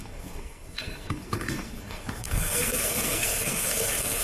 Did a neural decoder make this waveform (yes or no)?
yes